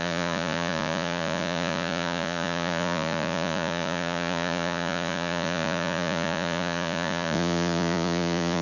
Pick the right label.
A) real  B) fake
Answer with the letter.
B